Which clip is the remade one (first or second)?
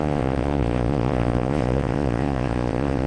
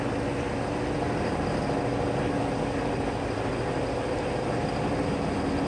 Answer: first